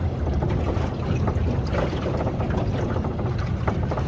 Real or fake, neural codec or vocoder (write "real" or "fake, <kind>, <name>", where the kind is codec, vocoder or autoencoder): real